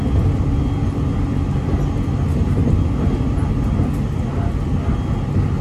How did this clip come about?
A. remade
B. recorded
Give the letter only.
B